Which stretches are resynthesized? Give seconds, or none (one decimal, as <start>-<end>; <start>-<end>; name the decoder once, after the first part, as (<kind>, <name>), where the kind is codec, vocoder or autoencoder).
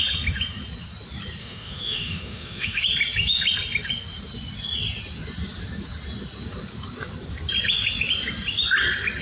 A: 1.4-2.8 (autoencoder, DAC-VAE)